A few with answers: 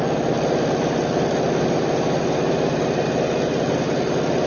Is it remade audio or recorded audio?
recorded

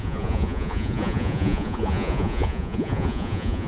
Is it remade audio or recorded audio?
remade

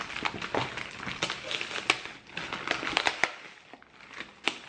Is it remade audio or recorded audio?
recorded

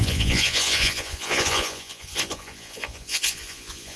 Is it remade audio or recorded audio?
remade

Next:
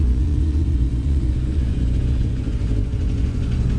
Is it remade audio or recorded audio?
remade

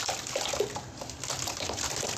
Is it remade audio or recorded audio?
recorded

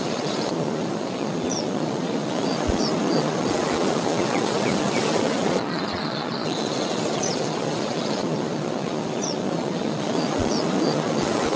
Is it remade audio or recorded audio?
remade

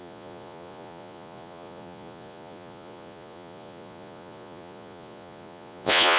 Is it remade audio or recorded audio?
remade